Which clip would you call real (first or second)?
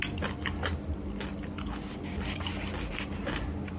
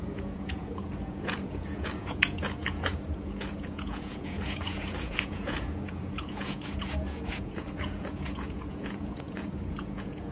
first